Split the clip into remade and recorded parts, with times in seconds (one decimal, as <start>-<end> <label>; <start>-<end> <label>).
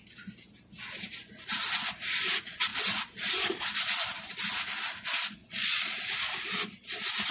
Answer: 0.0-5.4 recorded; 5.4-6.0 remade; 6.0-7.3 recorded